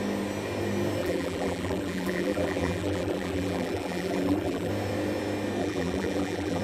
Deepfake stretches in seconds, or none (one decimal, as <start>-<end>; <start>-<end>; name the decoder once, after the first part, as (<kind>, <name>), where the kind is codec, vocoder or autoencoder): 1.0-4.7 (vocoder, BigVGAN v2); 5.6-6.6